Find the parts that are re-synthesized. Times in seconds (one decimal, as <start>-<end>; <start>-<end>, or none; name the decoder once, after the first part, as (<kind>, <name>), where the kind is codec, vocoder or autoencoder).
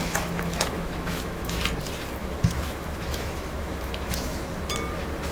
0.0-1.6 (autoencoder, DAC-VAE); 2.2-4.4